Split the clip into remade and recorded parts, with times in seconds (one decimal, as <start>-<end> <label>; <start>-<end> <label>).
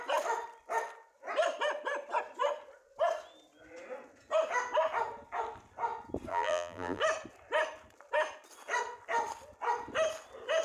0.0-6.3 recorded; 6.3-7.0 remade; 7.0-10.6 recorded